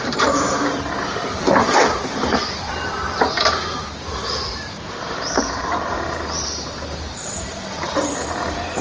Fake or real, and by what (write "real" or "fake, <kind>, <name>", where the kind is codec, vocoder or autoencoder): fake, vocoder, BigVGAN v2